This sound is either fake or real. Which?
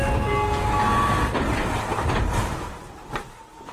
real